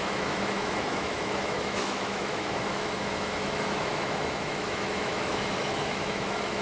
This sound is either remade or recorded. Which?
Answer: remade